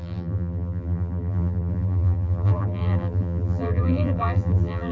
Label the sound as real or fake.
fake